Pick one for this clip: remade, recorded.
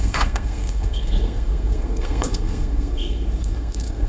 remade